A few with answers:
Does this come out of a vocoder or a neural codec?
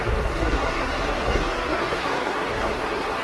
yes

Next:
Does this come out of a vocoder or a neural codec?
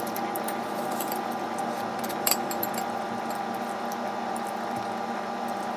yes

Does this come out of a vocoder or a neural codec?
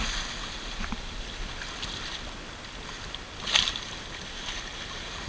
no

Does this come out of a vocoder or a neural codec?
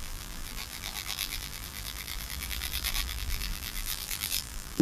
yes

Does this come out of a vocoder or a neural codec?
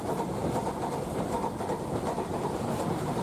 no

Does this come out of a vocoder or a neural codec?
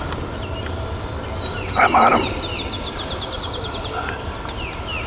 yes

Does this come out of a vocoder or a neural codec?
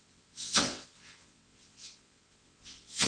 yes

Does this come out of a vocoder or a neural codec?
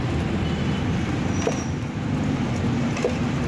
no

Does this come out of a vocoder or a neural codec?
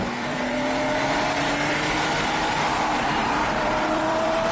yes